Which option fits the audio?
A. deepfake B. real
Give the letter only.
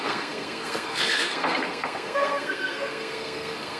A